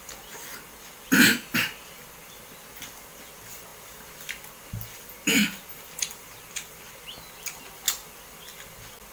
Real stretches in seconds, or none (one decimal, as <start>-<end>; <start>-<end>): 0.0-9.1